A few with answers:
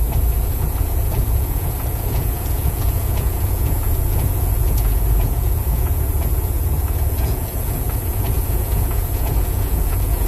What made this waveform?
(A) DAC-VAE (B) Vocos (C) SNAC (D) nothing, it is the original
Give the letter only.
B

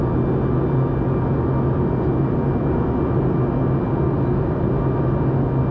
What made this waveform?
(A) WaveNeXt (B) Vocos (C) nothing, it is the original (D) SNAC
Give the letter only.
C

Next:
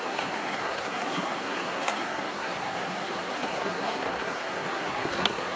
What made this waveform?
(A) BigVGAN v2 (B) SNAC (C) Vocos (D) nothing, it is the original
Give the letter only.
B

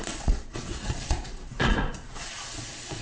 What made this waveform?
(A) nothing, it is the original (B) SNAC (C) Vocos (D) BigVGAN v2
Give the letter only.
C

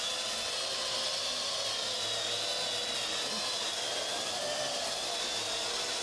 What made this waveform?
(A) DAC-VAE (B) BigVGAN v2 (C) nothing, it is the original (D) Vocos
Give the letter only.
C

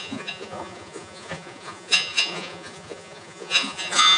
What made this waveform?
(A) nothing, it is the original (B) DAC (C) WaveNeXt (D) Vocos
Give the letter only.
D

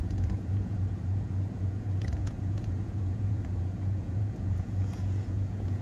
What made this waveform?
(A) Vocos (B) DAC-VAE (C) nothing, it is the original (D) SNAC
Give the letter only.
A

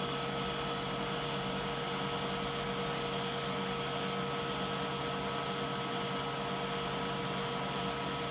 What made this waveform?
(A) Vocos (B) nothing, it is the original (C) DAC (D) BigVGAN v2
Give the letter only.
B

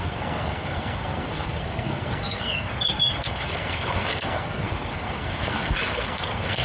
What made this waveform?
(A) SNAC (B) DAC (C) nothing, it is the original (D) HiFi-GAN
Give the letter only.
A